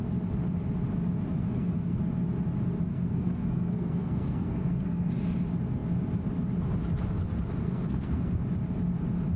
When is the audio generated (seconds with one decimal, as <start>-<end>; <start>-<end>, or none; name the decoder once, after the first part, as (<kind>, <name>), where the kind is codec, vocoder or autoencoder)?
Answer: 1.4-2.0 (codec, SNAC); 2.9-5.1; 7.6-8.4